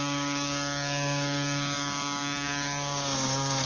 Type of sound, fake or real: fake